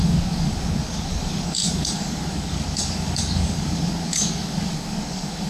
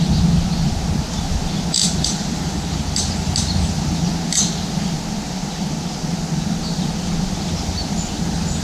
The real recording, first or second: second